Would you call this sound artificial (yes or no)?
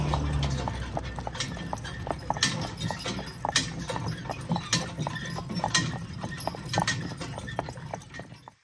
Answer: no